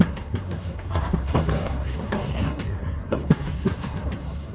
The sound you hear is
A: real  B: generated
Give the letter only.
B